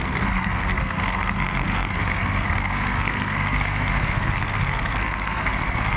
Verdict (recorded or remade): remade